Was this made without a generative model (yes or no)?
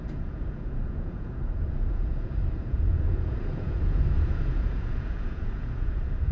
no